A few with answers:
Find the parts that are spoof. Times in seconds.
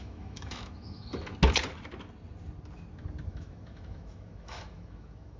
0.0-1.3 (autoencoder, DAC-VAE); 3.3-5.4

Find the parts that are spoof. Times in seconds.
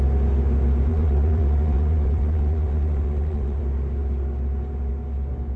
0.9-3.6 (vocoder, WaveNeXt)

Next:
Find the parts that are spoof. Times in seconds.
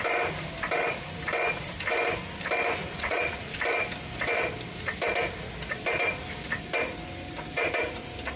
2.8-3.5 (vocoder, Vocos)